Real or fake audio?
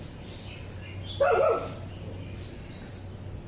real